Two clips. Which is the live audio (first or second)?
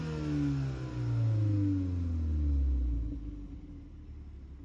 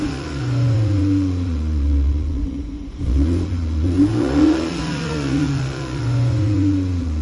first